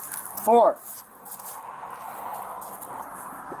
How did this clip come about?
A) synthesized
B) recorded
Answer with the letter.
B